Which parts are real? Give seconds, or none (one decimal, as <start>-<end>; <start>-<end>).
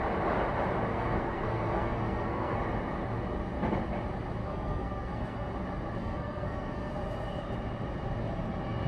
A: 0.0-0.9; 2.6-4.4; 5.5-6.0; 6.9-8.9